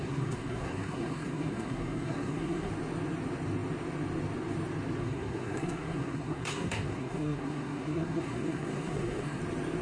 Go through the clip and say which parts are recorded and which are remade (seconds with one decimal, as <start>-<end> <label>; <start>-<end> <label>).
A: 0.0-2.7 remade; 2.7-5.0 recorded; 5.0-9.4 remade; 9.4-9.8 recorded

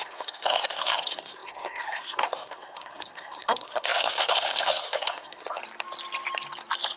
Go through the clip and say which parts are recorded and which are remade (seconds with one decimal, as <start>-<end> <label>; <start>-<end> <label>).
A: 0.0-5.6 remade; 5.6-7.0 recorded